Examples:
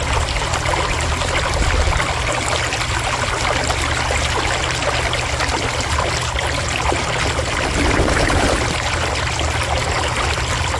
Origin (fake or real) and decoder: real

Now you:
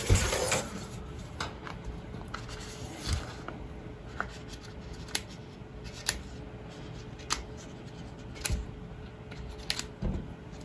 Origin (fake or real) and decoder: real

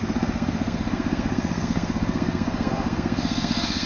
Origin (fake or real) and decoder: fake, codec, SNAC